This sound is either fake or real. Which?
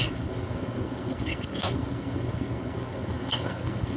fake